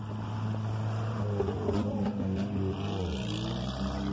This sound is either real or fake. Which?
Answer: real